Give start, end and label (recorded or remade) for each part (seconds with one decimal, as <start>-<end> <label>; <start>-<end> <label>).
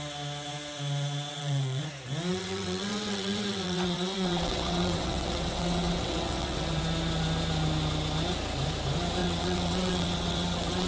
0.0-1.3 recorded; 1.3-1.8 remade; 1.8-2.3 recorded; 2.3-6.8 remade; 6.8-9.2 recorded; 9.2-10.9 remade